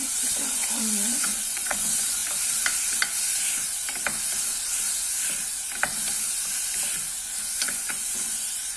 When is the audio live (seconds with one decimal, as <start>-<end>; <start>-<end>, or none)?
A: 2.2-7.2